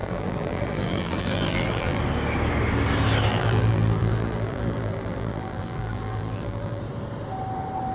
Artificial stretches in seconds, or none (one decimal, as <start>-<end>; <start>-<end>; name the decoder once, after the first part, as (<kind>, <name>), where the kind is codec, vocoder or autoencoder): 0.0-2.0 (vocoder, BigVGAN v2); 3.3-6.8